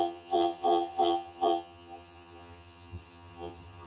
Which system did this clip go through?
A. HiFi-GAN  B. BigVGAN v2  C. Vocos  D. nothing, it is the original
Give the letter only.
A